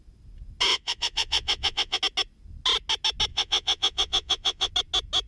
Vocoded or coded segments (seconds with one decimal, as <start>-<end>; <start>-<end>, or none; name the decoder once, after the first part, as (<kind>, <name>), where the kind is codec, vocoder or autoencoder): 0.7-2.0 (vocoder, WaveNeXt); 3.3-4.7